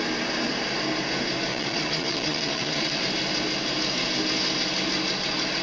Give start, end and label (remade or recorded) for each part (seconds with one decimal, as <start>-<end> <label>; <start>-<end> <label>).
0.0-1.5 recorded; 1.5-3.0 remade; 3.0-5.6 recorded